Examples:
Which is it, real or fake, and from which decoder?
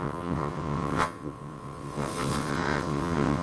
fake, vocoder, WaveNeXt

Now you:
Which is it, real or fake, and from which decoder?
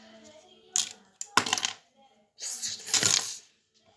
real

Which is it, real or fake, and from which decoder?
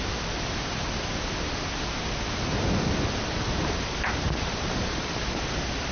real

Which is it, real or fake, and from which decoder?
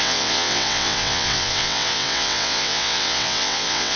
fake, vocoder, WaveNeXt